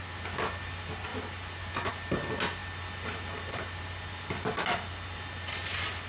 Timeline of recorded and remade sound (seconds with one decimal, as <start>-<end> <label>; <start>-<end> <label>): 0.0-6.1 recorded